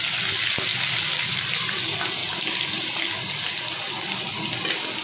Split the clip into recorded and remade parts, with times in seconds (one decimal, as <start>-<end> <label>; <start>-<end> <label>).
0.0-5.0 recorded